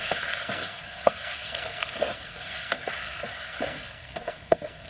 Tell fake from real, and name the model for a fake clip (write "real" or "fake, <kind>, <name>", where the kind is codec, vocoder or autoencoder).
fake, codec, SNAC